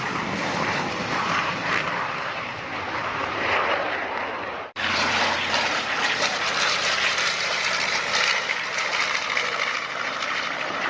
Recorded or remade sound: remade